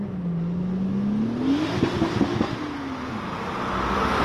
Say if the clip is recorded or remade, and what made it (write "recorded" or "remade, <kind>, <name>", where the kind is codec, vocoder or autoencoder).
recorded